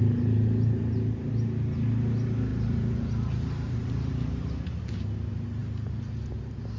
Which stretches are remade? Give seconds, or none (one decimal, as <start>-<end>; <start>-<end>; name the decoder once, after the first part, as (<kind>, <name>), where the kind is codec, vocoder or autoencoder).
2.5-4.9 (vocoder, BigVGAN v2)